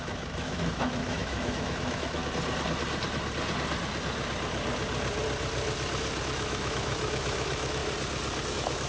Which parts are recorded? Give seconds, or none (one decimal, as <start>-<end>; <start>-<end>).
2.2-6.2; 7.8-8.5